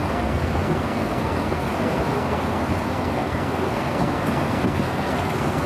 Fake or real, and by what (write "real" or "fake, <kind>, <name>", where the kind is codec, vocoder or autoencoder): fake, codec, SNAC